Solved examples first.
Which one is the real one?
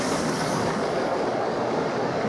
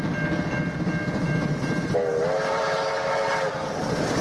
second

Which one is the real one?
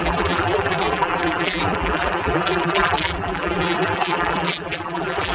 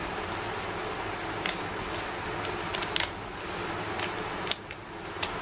second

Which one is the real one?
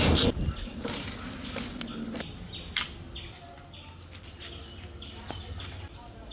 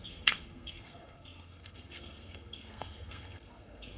first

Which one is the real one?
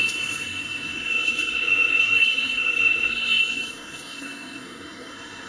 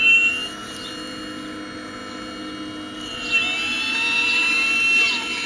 second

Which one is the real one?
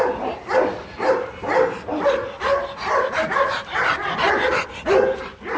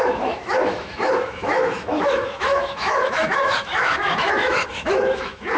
first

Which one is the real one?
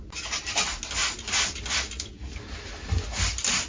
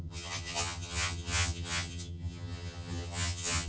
first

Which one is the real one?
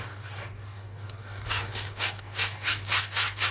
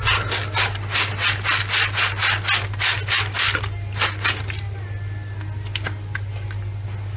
second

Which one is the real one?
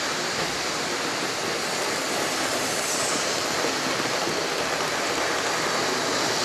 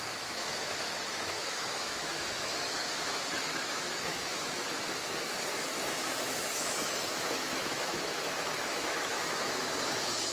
first